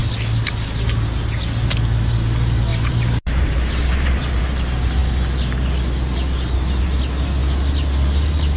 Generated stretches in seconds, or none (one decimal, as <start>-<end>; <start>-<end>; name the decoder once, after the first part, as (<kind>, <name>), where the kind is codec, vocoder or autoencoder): 2.7-4.4 (vocoder, BigVGAN v2)